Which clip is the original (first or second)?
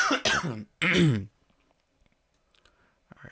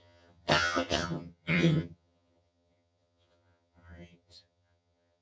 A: first